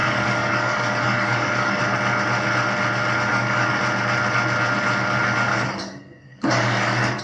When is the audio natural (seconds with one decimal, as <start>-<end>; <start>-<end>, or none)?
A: 1.8-3.3; 3.8-5.5